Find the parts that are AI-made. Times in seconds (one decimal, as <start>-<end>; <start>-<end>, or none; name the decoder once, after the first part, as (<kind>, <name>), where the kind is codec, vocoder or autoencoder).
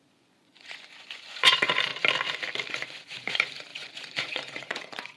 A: 0.0-1.9 (vocoder, Vocos); 2.7-5.2